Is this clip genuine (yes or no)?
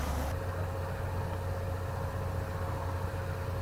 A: yes